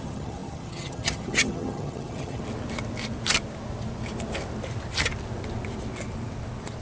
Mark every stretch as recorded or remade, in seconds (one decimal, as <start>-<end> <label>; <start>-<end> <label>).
0.0-2.4 remade; 2.4-6.8 recorded